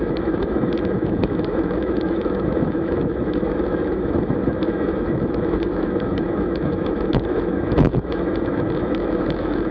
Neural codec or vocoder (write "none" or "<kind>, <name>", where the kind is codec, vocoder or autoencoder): autoencoder, DAC-VAE